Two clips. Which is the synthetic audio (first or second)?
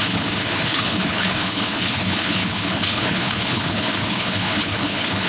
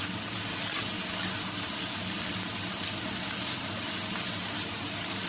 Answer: first